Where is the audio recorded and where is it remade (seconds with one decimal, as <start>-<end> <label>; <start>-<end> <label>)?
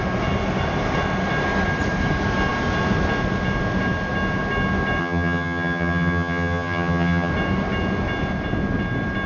0.0-5.0 recorded; 5.0-7.3 remade; 7.3-9.3 recorded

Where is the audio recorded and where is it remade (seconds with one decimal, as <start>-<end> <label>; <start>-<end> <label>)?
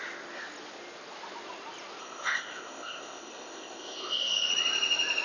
0.0-2.0 recorded; 2.0-4.5 remade; 4.5-5.2 recorded